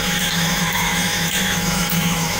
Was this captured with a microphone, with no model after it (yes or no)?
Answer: no